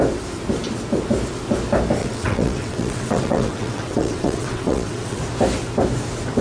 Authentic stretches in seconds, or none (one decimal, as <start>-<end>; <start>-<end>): 0.0-2.0; 5.2-6.4